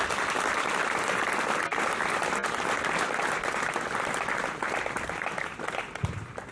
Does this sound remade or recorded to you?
recorded